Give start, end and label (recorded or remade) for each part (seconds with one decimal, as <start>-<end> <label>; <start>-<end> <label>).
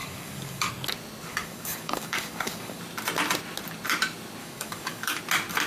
0.0-0.7 remade; 0.7-1.3 recorded; 1.3-2.8 remade; 2.8-4.4 recorded; 4.4-5.2 remade; 5.2-5.7 recorded